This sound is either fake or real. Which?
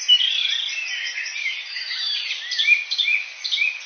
real